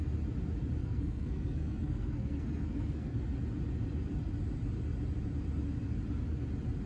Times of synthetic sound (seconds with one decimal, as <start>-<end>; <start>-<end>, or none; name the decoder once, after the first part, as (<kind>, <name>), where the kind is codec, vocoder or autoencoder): 0.8-3.2 (codec, SNAC)